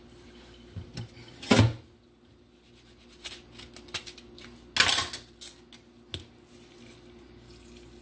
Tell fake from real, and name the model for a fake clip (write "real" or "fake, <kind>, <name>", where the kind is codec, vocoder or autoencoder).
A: real